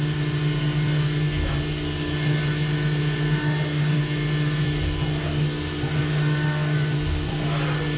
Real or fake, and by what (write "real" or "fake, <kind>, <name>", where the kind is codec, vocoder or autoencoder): real